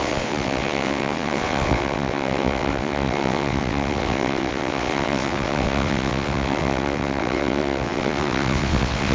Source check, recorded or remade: remade